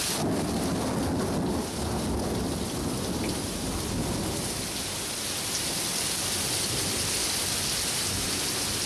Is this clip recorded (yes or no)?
yes